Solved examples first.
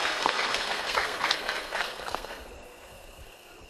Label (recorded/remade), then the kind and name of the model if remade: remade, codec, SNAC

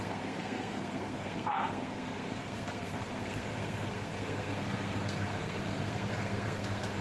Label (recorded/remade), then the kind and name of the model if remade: remade, codec, SNAC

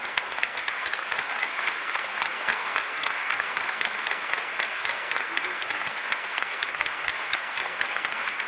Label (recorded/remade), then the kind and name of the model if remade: remade, codec, SNAC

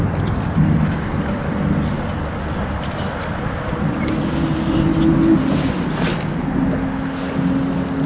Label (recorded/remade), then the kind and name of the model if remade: recorded